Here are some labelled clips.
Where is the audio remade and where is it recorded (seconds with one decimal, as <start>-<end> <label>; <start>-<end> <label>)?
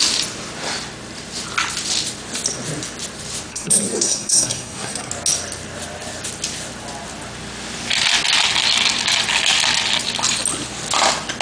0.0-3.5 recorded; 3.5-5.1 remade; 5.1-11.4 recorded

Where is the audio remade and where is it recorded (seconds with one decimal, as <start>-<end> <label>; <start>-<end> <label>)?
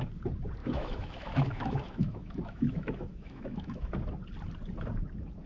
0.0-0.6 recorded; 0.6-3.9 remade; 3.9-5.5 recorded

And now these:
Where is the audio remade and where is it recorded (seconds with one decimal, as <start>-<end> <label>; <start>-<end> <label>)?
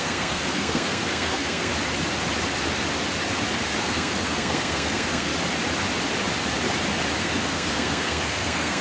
0.0-1.7 remade; 1.7-3.8 recorded; 3.8-5.3 remade; 5.3-7.2 recorded; 7.2-8.8 remade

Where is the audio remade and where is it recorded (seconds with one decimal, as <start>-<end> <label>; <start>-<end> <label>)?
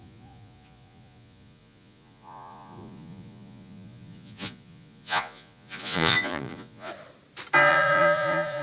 0.0-6.9 remade; 6.9-7.7 recorded; 7.7-8.6 remade